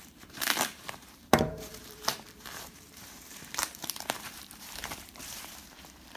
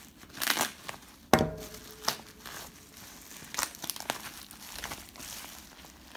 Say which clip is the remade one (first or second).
first